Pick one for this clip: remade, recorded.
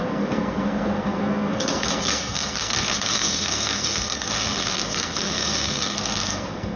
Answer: remade